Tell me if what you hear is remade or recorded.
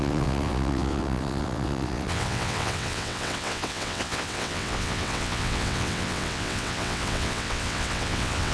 remade